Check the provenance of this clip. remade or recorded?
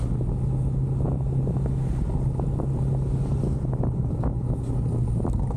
recorded